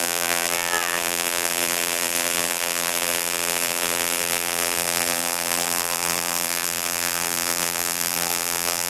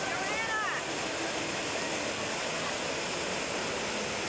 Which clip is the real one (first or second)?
second